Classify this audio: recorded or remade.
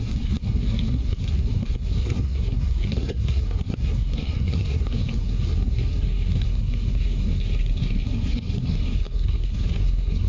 remade